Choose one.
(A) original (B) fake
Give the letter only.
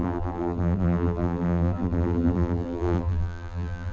B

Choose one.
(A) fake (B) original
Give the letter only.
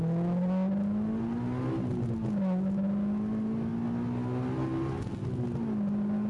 B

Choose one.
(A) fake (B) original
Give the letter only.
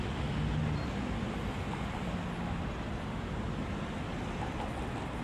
B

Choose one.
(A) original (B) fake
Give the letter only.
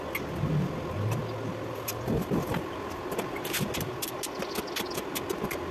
A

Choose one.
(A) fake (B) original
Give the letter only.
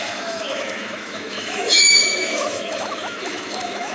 A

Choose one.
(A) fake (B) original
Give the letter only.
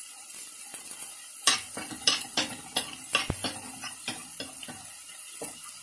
B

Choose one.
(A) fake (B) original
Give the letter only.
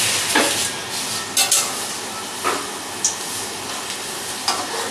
B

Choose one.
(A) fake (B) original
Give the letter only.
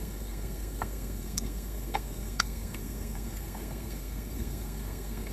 A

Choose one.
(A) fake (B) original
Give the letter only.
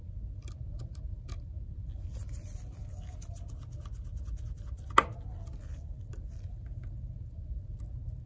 B